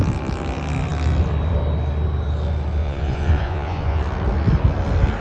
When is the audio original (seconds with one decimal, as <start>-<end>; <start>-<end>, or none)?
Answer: 0.0-2.8; 4.0-5.2